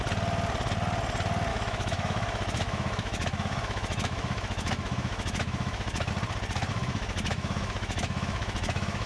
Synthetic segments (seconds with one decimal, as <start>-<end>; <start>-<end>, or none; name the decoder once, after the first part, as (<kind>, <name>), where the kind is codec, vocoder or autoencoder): 1.5-6.1 (autoencoder, DAC-VAE); 6.7-9.1